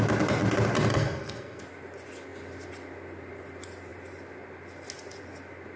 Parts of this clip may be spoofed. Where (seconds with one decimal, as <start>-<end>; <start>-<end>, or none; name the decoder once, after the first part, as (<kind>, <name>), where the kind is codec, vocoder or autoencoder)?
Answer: 0.9-1.6 (codec, SNAC)